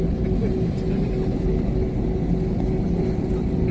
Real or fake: real